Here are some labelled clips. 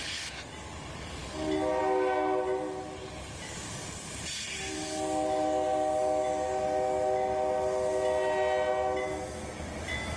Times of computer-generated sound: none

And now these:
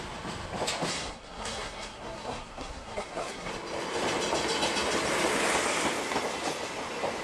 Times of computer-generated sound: 0.9-3.5 (codec, SNAC)

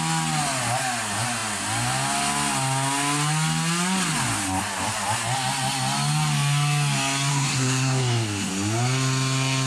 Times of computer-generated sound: 7.3-8.5 (codec, SNAC)

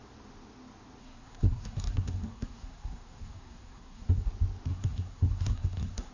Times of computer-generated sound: 1.0-4.3 (codec, SNAC); 4.7-6.1

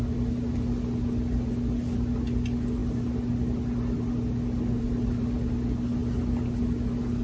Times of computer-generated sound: none